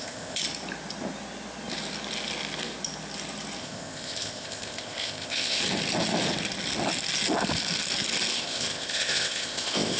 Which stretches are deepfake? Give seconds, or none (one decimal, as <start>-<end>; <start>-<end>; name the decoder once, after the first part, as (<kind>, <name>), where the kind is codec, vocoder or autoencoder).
0.0-0.4 (codec, ZipCodec); 3.6-5.6; 8.3-10.0